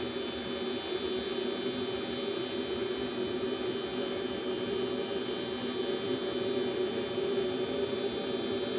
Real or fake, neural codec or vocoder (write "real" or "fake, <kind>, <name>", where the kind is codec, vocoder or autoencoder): real